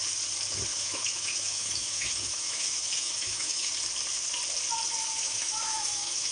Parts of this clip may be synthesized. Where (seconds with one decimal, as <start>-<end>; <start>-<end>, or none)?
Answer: 0.7-3.7; 5.0-6.3